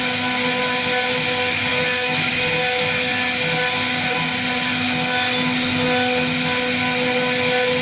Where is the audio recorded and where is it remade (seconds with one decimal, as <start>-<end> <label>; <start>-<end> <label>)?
0.0-1.7 recorded; 1.7-2.3 remade; 2.3-7.8 recorded